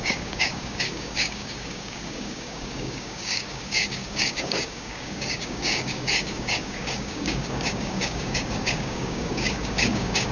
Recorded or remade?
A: remade